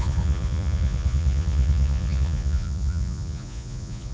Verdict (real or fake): fake